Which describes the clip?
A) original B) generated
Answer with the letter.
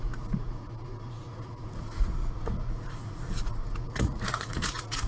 B